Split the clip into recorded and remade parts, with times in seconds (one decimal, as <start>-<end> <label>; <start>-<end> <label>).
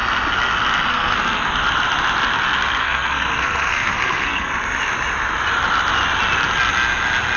0.0-0.9 recorded; 0.9-1.5 remade; 1.5-2.8 recorded; 2.8-4.5 remade; 4.5-7.4 recorded